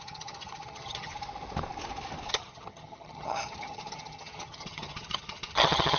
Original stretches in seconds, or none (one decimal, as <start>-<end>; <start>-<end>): 1.1-2.3